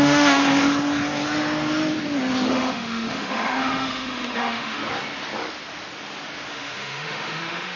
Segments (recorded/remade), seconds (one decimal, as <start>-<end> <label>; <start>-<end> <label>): 0.0-0.4 remade; 0.4-2.5 recorded; 2.5-4.8 remade; 4.8-6.5 recorded; 6.5-7.8 remade